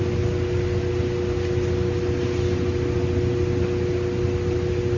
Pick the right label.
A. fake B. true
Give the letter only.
B